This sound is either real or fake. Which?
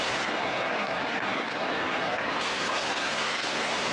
fake